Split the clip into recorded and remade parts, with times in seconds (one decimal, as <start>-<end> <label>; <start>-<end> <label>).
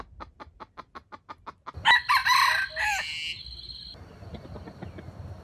0.0-5.4 recorded